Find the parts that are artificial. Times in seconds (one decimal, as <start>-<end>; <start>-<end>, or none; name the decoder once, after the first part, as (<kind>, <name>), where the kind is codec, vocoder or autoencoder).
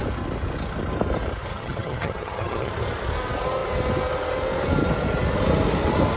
1.5-2.7 (vocoder, HiFi-GAN)